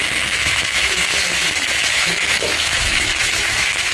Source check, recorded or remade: remade